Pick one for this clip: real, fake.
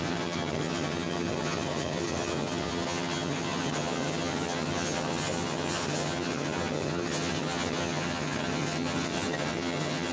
fake